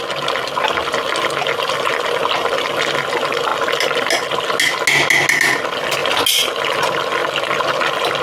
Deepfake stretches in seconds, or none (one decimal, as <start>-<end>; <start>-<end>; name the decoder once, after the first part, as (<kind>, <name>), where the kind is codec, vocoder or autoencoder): none